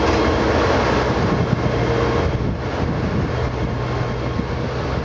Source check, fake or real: real